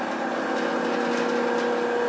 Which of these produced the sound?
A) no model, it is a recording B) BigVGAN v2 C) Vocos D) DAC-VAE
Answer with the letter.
A